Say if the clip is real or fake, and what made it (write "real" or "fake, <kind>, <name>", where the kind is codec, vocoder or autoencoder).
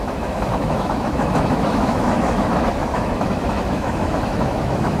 fake, autoencoder, DAC-VAE